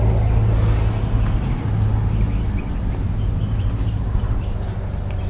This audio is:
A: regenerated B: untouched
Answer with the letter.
B